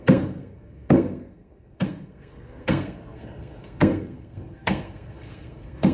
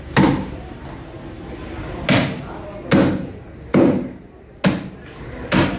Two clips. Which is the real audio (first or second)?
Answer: second